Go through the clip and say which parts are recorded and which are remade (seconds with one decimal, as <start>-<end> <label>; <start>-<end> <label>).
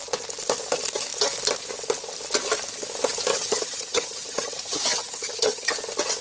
0.0-3.3 recorded; 3.3-5.7 remade; 5.7-6.2 recorded